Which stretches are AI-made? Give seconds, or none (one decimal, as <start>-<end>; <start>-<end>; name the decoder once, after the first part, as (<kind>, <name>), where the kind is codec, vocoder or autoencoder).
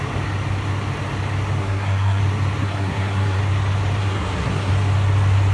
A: 1.6-2.2 (codec, SNAC); 2.6-3.4; 4.0-4.7